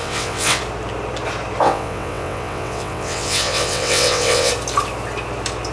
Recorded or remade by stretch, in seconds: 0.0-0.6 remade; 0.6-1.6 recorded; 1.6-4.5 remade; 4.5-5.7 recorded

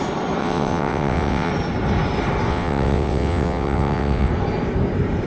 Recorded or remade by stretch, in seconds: 0.0-0.4 recorded; 0.4-1.5 remade; 1.5-2.5 recorded; 2.5-4.3 remade; 4.3-5.3 recorded